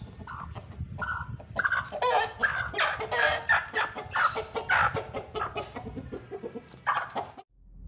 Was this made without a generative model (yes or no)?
yes